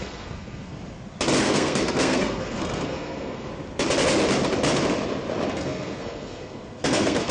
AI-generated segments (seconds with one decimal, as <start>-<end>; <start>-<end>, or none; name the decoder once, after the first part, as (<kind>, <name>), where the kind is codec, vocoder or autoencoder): 0.0-0.7 (codec, SNAC); 1.4-3.5; 5.5-7.3